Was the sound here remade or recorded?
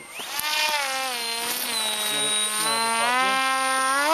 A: recorded